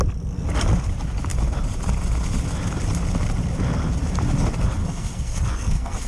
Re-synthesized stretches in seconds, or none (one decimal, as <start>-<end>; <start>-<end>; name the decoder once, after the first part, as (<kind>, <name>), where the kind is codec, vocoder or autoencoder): 4.8-6.1 (codec, SNAC)